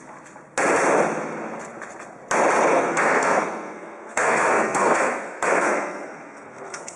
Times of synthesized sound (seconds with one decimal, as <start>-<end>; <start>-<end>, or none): 2.7-7.0